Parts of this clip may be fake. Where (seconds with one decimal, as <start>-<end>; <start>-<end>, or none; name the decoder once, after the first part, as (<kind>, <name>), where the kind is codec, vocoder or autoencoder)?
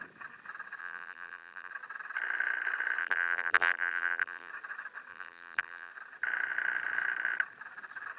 0.8-1.7 (vocoder, BigVGAN v2); 3.0-4.5; 5.1-5.9